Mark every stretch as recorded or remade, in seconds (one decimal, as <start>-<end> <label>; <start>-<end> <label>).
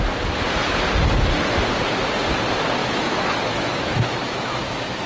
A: 0.0-2.8 recorded; 2.8-5.1 remade